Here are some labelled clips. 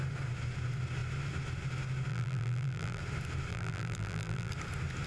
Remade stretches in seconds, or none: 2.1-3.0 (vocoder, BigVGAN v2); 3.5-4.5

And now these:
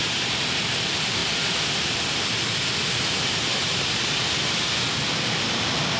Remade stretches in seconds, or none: 0.0-6.0 (vocoder, BigVGAN v2)

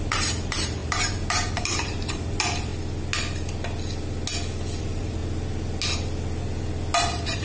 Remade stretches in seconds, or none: 0.0-2.7 (vocoder, BigVGAN v2); 4.8-5.2; 7.0-7.4

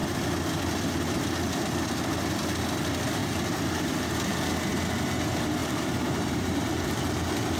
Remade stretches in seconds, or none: 3.2-4.0 (vocoder, BigVGAN v2); 5.6-6.7

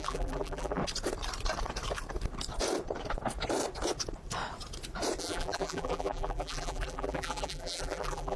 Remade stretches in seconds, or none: 0.0-0.8 (vocoder, BigVGAN v2); 5.2-8.4

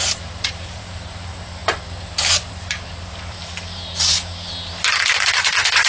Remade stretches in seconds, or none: 0.0-4.2 (vocoder, BigVGAN v2); 5.3-5.9